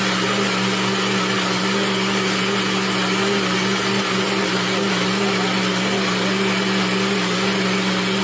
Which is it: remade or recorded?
recorded